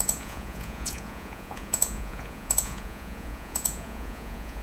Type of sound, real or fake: fake